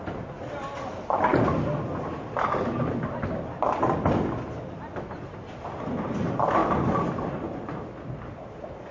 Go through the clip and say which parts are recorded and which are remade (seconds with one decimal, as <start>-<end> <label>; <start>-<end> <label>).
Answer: 0.0-8.9 recorded